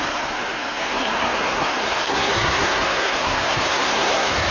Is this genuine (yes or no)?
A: no